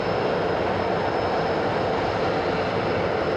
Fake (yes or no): no